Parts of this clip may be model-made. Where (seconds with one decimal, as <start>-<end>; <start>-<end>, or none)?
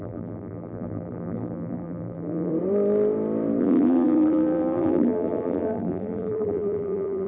0.0-2.5; 3.6-7.3